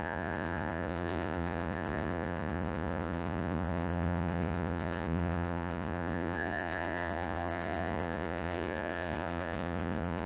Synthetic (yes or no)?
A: yes